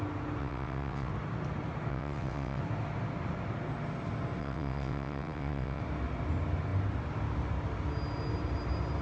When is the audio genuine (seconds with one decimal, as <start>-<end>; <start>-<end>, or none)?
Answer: 0.0-0.4; 1.1-1.9; 2.6-4.4; 5.8-9.0

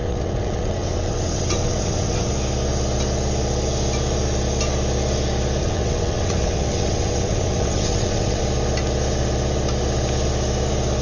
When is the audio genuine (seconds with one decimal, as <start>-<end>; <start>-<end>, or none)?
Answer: 2.3-5.6; 8.4-11.0

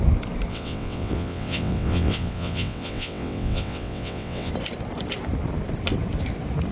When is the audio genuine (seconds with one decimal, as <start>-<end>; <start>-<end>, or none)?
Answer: 0.0-0.5; 4.5-6.7

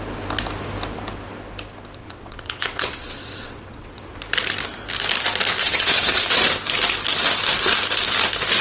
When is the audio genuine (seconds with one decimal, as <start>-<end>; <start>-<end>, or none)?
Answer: 0.0-2.0; 4.2-5.6; 6.2-8.6

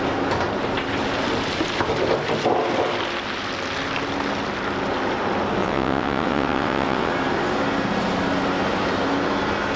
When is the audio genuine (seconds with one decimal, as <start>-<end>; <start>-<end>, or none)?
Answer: 0.0-5.6; 7.1-9.8

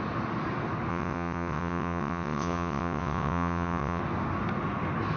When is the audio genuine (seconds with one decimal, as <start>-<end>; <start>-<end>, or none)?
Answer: 0.0-0.9; 4.0-5.2

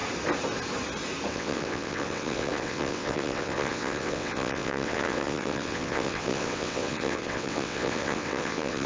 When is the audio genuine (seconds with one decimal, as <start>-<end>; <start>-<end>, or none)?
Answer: 0.0-1.3

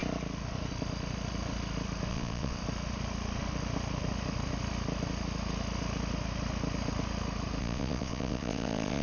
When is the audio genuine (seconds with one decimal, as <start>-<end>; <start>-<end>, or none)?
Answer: 0.0-2.1; 2.6-7.6